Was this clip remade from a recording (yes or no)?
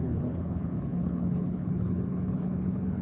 yes